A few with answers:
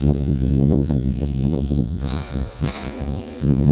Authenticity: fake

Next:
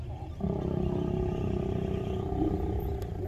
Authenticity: real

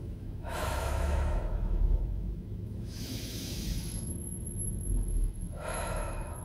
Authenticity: fake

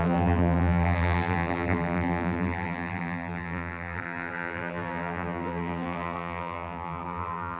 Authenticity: fake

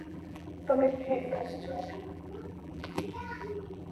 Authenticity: fake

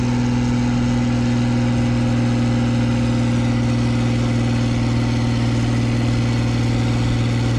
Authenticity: real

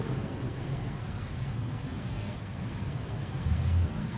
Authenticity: fake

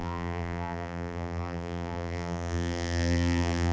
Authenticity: fake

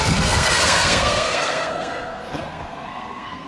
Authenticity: fake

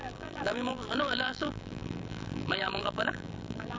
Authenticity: fake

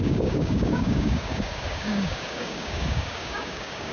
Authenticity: fake